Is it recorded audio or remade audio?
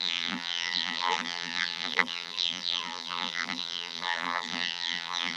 remade